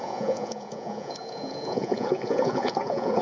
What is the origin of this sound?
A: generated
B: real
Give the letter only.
A